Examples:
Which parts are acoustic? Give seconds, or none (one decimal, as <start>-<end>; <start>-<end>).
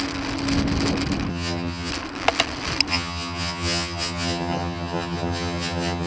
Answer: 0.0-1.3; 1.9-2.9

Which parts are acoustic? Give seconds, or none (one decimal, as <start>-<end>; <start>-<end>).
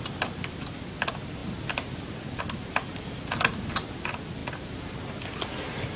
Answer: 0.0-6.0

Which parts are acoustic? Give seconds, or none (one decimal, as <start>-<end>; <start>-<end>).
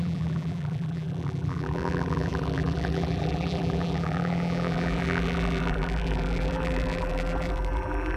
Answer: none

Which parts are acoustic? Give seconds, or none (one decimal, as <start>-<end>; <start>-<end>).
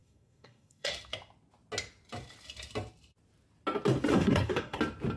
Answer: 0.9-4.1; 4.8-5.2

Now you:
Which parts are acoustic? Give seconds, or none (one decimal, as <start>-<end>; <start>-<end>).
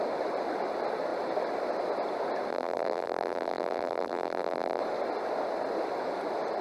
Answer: 0.0-2.5; 4.8-6.6